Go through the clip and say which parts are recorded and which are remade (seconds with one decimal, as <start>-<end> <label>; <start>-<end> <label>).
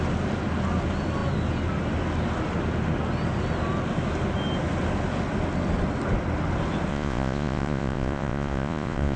0.0-6.9 recorded; 6.9-9.2 remade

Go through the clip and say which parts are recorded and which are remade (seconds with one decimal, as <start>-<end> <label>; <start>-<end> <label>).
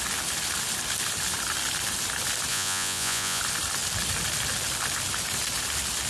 0.0-2.5 recorded; 2.5-3.4 remade; 3.4-6.1 recorded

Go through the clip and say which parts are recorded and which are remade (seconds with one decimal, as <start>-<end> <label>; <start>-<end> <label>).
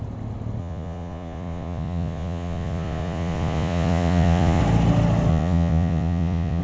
0.0-0.6 recorded; 0.6-4.6 remade; 4.6-5.3 recorded; 5.3-6.6 remade